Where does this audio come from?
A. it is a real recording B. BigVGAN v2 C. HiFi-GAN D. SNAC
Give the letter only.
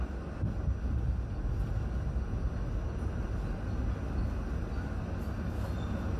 A